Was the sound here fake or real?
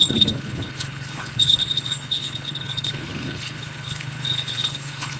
fake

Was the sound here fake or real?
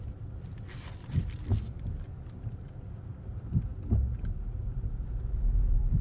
real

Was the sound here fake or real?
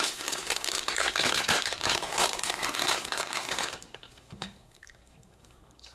fake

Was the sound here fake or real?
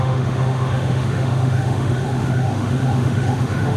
fake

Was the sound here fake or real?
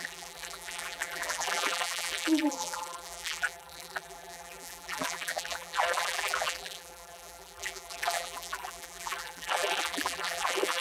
fake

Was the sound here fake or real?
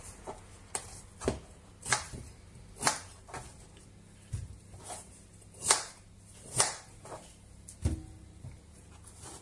real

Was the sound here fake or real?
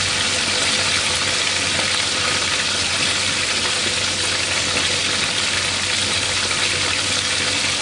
real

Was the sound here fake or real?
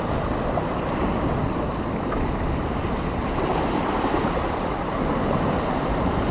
real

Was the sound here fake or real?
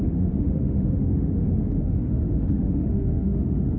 fake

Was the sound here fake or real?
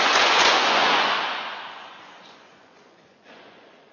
fake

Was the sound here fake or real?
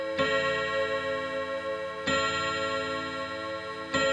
real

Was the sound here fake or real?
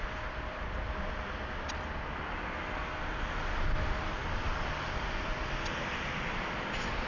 real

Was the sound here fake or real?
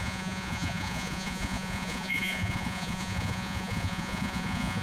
fake